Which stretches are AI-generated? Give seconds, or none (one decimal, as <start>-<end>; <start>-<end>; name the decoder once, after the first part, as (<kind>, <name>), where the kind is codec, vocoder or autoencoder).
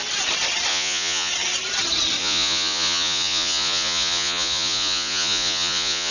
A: 0.7-1.3 (vocoder, Vocos); 2.2-6.1